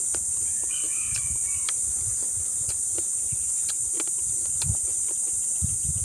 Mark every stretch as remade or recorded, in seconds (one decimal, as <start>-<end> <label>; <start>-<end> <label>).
0.0-6.0 recorded